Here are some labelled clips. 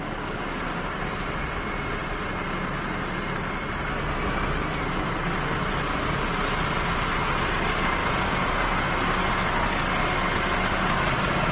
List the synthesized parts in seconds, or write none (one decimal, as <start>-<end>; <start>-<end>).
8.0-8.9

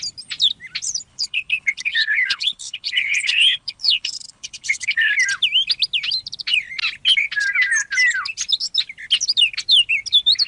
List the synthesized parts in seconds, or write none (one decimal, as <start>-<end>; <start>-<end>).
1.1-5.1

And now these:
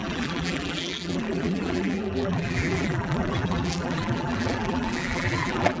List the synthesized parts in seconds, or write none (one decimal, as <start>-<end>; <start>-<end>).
0.0-5.8

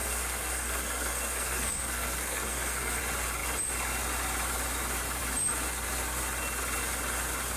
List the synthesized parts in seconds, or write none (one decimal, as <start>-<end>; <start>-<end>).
0.0-3.0